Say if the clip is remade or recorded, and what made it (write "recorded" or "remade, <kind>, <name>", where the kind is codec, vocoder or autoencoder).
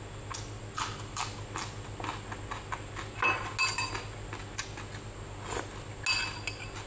recorded